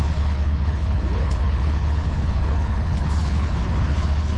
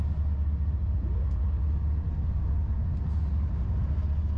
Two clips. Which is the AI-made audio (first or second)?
first